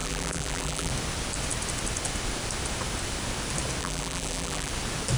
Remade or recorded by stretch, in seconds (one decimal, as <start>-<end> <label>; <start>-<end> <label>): 0.0-0.9 remade; 0.9-3.8 recorded; 3.8-4.7 remade; 4.7-5.2 recorded